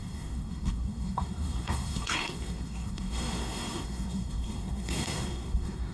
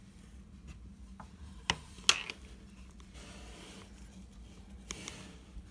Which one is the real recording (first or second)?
second